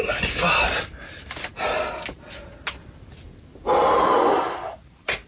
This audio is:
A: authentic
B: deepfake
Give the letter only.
A